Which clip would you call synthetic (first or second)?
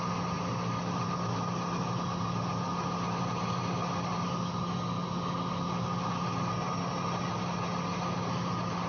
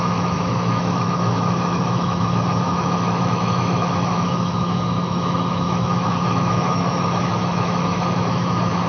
second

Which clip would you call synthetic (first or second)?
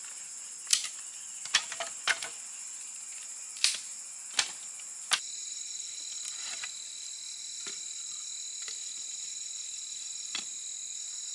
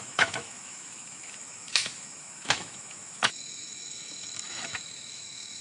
second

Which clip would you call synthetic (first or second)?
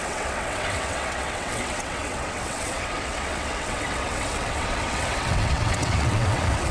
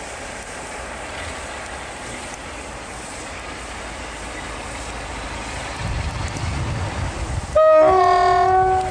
first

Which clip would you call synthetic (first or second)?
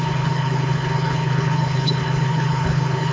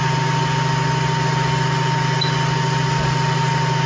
first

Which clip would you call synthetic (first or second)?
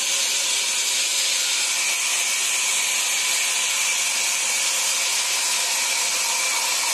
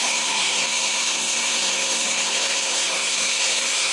second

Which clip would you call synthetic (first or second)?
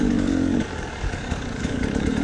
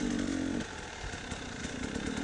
first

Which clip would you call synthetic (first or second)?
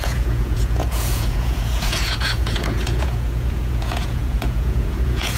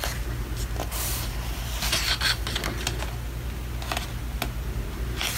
first